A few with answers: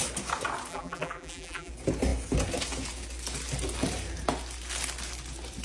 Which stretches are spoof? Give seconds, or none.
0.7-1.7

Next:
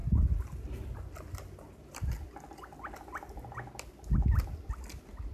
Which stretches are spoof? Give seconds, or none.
none

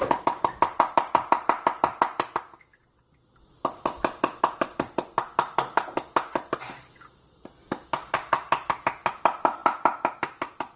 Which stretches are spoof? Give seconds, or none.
none